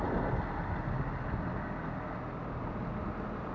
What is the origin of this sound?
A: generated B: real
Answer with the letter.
B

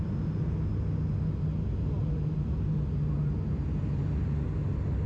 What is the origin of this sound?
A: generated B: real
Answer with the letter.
B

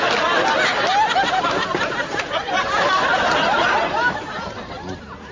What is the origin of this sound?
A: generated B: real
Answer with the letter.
B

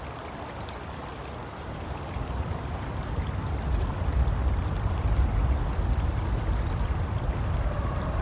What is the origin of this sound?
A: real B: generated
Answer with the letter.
A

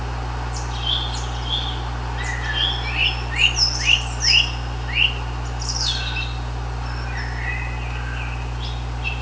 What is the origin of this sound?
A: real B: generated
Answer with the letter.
A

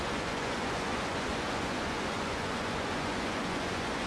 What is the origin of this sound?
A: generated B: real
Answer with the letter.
A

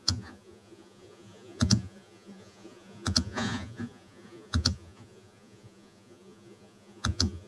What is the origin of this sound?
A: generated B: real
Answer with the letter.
A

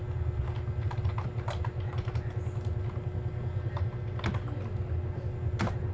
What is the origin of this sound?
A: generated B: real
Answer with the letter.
B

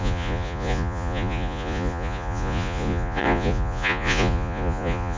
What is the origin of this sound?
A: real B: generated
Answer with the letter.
B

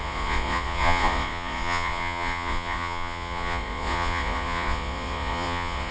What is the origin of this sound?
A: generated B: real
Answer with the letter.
A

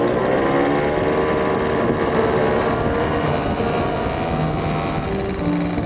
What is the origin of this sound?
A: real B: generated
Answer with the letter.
A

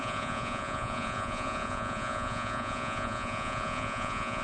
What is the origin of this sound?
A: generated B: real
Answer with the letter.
A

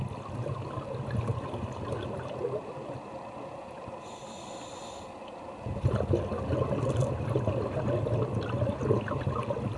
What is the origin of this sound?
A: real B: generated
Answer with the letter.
A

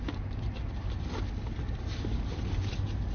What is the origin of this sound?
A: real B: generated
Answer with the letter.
A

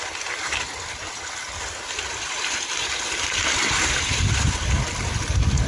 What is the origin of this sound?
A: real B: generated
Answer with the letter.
A